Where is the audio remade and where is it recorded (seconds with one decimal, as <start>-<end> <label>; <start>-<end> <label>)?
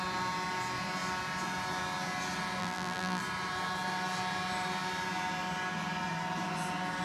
0.0-2.6 recorded; 2.6-3.2 remade; 3.2-7.0 recorded